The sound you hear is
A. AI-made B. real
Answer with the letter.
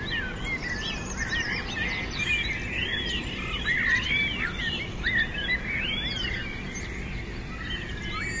B